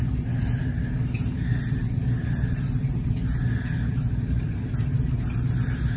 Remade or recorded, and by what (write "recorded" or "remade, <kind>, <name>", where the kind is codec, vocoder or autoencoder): recorded